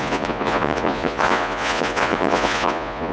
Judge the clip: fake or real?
fake